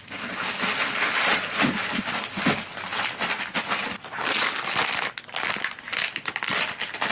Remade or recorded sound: recorded